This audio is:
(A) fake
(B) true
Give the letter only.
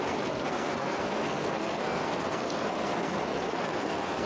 A